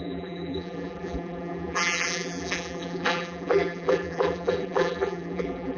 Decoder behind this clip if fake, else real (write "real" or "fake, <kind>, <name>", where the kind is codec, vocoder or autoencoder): fake, vocoder, BigVGAN v2